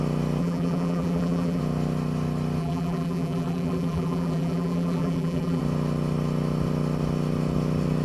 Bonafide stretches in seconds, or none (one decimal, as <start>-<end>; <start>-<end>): 0.0-0.4; 1.6-2.6; 5.6-8.0